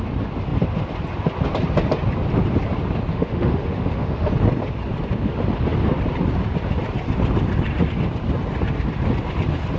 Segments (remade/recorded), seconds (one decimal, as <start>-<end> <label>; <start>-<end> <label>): 0.0-3.1 recorded; 3.1-4.3 remade; 4.3-9.8 recorded